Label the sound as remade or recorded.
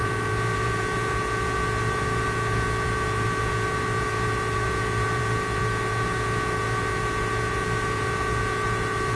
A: remade